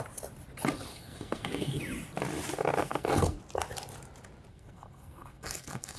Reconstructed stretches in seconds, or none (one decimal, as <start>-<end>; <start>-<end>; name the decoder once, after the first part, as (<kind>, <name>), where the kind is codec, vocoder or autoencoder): 0.9-1.8 (codec, SNAC); 2.8-3.4; 4.5-6.0